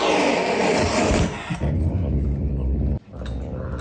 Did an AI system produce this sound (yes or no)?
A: no